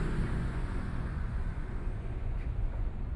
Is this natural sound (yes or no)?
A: no